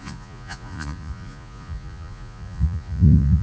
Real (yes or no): no